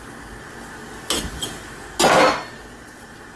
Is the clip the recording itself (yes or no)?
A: yes